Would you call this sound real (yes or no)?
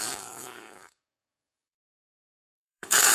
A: no